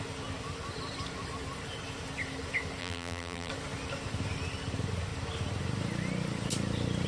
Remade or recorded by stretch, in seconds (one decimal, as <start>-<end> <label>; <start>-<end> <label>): 0.0-2.8 recorded; 2.8-3.5 remade; 3.5-7.1 recorded